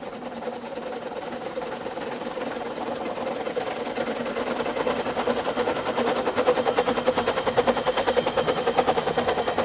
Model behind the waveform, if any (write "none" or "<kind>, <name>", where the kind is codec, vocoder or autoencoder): none